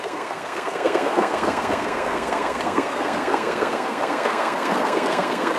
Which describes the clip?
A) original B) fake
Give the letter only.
B